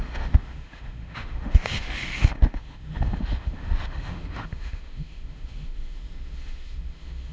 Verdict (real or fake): fake